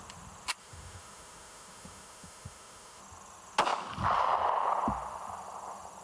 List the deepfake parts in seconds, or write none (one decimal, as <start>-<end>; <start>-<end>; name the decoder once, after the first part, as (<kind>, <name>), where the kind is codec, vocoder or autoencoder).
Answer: 0.6-3.0 (autoencoder, DAC-VAE)